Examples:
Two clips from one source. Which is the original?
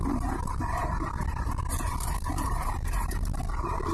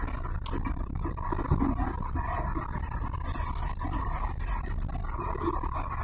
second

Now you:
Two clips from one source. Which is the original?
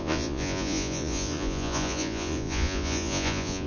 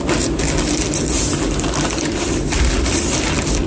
second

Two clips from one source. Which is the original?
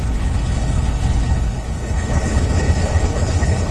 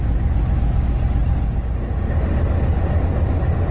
second